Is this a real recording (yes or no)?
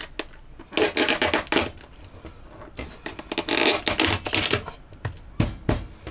yes